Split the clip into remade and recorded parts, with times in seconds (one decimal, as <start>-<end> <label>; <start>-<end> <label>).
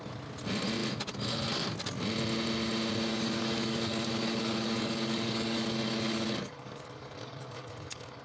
0.0-3.1 recorded; 3.1-8.2 remade